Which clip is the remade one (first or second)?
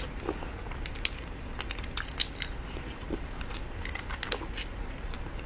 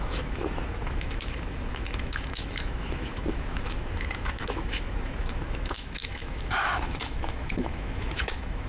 second